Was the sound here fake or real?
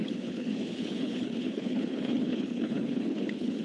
fake